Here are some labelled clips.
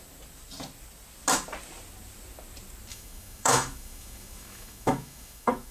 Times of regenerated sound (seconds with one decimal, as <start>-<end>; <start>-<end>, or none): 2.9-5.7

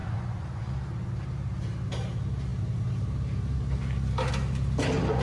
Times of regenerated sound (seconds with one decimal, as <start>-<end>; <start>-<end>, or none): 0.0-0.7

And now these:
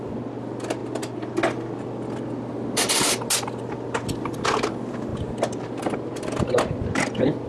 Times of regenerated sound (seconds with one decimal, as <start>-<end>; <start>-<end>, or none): none

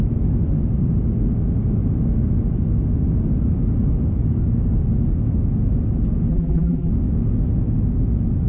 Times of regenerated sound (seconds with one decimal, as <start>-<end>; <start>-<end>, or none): 6.3-6.9